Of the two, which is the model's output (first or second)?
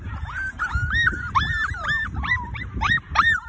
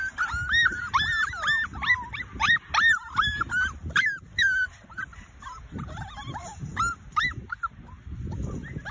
first